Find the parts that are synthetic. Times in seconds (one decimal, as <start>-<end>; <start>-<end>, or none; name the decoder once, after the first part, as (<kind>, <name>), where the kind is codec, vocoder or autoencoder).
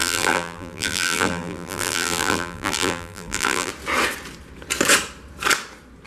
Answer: 0.0-3.7 (vocoder, BigVGAN v2)